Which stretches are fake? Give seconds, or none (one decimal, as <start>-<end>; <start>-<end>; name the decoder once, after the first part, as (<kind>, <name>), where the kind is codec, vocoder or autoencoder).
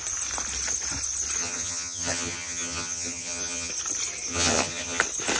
1.4-3.7 (vocoder, HiFi-GAN); 4.3-5.0